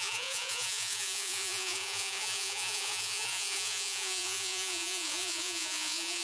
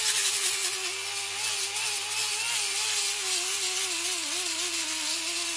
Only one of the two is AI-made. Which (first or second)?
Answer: first